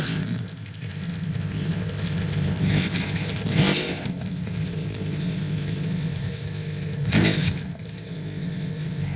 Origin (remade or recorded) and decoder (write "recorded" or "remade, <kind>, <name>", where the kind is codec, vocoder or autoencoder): remade, codec, ZipCodec